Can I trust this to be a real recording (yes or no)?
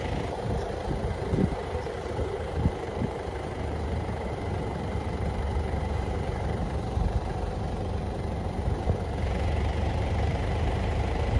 no